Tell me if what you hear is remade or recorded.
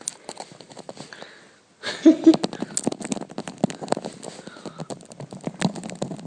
recorded